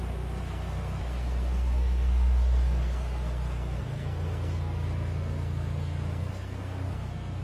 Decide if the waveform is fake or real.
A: fake